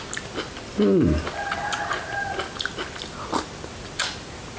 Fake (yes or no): no